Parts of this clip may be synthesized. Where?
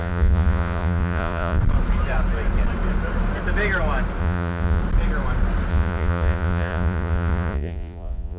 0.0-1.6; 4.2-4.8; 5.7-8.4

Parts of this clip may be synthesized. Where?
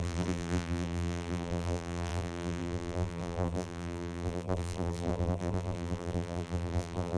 0.0-7.2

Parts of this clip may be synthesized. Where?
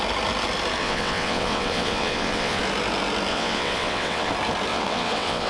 0.8-2.6; 3.3-4.3; 4.7-5.5